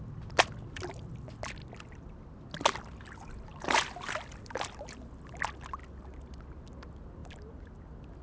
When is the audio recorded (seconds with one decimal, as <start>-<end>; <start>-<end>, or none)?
0.0-8.2